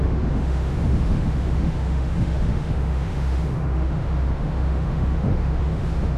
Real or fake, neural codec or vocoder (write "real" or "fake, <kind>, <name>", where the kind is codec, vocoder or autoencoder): fake, autoencoder, DAC-VAE